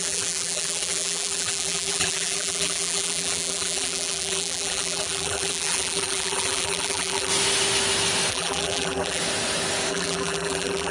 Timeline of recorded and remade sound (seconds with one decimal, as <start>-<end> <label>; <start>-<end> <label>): 0.0-7.3 remade; 7.3-8.3 recorded; 8.3-9.2 remade; 9.2-9.9 recorded; 9.9-10.9 remade

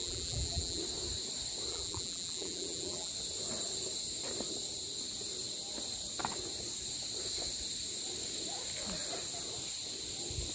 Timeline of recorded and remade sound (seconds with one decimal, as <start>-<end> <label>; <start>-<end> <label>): 0.0-0.8 remade; 0.8-1.7 recorded; 1.7-3.1 remade; 3.1-10.5 recorded

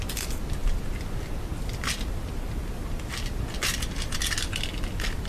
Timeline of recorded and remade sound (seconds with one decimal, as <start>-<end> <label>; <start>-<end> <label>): 0.0-5.3 recorded